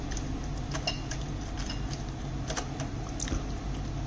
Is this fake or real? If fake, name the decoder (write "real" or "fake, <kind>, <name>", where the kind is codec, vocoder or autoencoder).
real